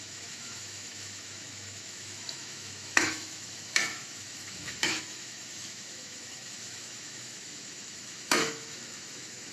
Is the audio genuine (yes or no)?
no